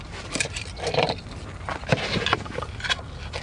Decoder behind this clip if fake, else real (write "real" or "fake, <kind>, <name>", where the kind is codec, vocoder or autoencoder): real